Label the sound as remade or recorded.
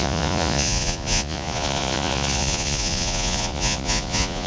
remade